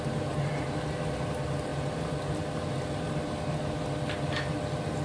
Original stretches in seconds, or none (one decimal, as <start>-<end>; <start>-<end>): 0.0-5.0